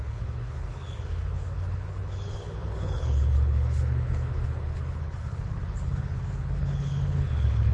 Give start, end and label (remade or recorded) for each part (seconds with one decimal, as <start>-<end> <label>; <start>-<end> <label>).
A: 0.0-7.7 remade